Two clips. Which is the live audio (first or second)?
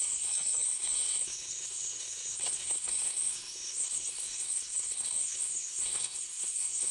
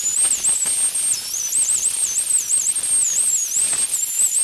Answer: second